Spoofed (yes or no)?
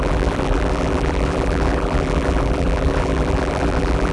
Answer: yes